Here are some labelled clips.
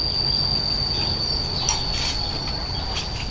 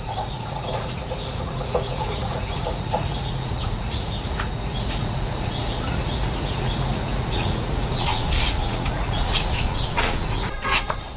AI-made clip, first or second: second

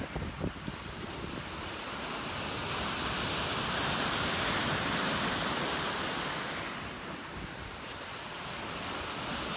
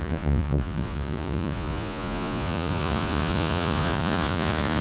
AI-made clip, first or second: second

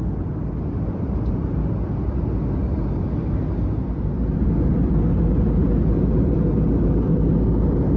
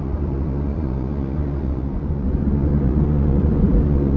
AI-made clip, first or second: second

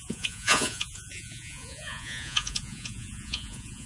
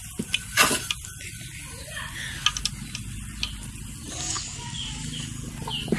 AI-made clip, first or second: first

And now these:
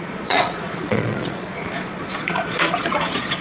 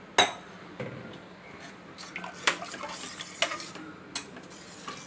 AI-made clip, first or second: first